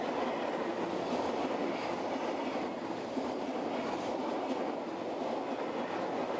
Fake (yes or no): no